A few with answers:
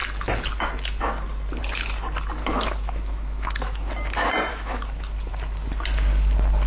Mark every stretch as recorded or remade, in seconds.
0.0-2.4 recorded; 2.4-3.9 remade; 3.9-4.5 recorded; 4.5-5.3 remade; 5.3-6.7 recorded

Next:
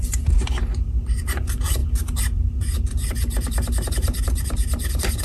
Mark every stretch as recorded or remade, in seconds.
0.0-5.2 remade